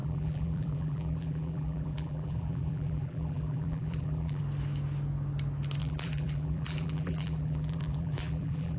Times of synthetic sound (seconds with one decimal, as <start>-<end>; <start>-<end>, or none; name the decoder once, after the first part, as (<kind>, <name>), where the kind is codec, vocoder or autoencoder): 0.0-4.4 (vocoder, BigVGAN v2); 5.8-8.8